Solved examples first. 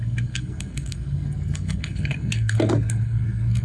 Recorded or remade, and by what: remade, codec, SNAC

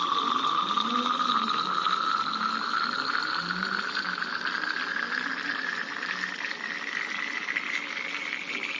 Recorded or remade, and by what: recorded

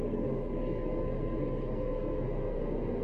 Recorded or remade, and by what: remade, codec, SNAC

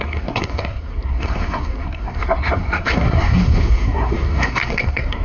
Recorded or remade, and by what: remade, codec, SNAC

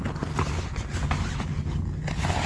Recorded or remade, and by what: recorded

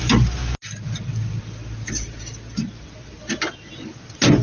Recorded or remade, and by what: recorded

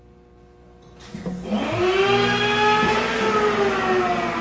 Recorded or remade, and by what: recorded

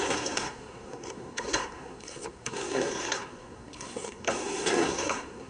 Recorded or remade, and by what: remade, codec, SNAC